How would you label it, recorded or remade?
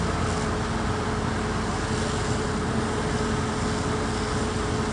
recorded